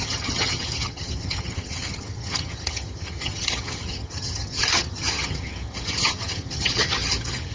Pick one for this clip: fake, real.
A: fake